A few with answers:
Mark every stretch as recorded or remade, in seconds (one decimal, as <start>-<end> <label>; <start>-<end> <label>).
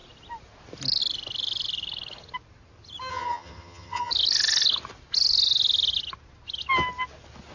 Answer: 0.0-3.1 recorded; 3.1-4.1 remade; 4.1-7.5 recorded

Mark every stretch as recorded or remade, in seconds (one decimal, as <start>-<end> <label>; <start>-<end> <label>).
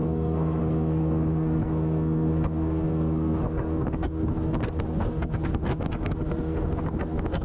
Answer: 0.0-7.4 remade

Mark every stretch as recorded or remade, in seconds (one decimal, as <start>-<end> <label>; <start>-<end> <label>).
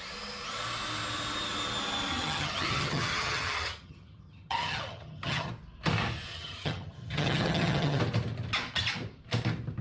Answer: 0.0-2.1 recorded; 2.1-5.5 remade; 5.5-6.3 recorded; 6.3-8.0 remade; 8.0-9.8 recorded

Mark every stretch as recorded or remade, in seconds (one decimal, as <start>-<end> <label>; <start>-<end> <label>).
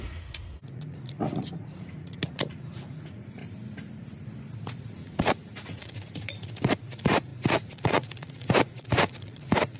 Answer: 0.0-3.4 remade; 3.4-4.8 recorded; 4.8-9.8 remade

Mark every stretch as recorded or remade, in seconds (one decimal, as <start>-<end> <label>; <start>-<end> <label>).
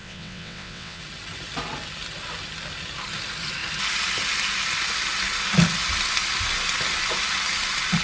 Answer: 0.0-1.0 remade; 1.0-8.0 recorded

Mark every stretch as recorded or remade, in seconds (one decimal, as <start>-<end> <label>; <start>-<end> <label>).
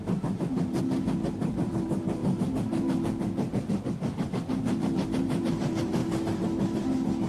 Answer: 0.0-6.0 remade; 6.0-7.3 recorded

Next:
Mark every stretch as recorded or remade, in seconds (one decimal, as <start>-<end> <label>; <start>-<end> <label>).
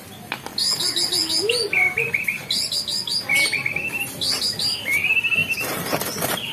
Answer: 0.0-6.5 recorded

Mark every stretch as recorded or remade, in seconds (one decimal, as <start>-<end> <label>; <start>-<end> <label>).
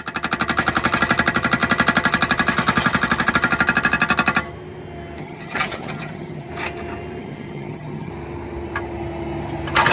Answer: 0.0-5.2 recorded; 5.2-6.5 remade; 6.5-7.2 recorded; 7.2-8.1 remade; 8.1-9.9 recorded